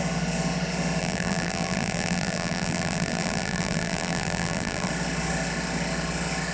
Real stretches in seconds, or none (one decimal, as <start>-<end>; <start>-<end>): 0.0-1.0; 4.9-6.5